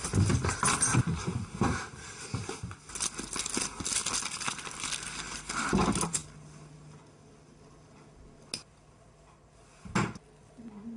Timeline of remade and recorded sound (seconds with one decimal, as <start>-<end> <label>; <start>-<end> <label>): 0.0-11.0 recorded